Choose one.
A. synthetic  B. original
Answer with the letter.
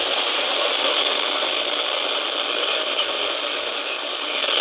B